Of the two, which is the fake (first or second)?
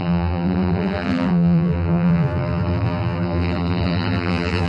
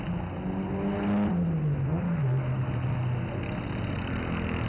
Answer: first